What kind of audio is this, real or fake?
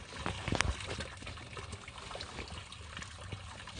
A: real